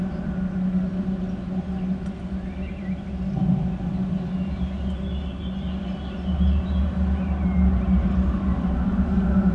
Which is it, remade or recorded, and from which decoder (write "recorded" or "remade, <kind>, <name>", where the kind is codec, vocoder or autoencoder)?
recorded